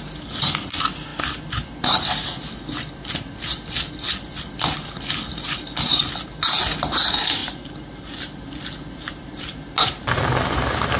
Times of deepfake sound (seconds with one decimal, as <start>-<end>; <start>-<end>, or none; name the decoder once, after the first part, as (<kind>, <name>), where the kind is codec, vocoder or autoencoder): none